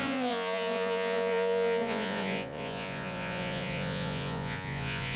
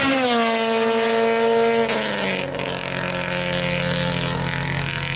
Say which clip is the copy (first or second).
first